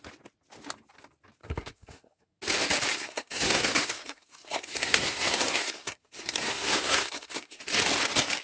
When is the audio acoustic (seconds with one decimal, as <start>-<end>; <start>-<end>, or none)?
0.0-1.4; 2.4-2.9; 7.6-8.4